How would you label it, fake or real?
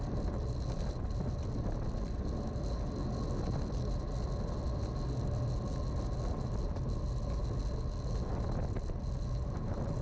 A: real